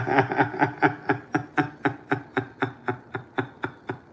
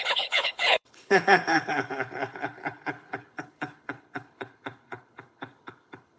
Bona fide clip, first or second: first